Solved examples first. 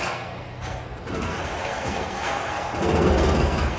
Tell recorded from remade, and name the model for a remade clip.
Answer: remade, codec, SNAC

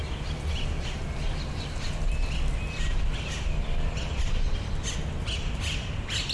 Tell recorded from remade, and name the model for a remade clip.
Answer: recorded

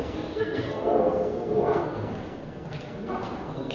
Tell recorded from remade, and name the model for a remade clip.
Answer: remade, codec, SNAC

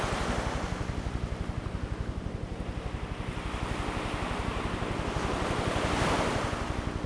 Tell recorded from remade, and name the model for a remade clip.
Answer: recorded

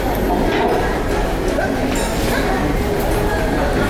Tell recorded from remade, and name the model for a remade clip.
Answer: recorded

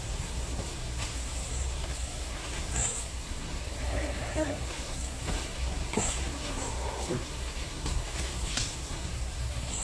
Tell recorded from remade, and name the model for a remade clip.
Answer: remade, codec, SNAC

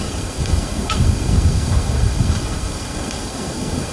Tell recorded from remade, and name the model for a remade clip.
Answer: remade, codec, SNAC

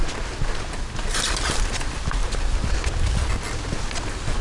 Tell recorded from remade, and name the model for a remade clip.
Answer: recorded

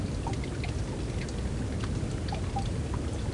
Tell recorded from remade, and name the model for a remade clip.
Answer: recorded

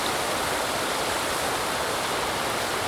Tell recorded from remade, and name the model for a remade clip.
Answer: recorded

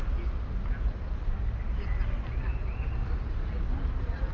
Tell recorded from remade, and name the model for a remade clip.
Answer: recorded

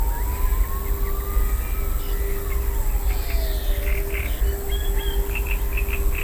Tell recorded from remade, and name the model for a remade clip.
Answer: recorded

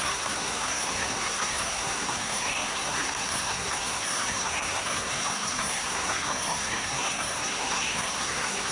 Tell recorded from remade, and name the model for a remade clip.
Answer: remade, codec, SNAC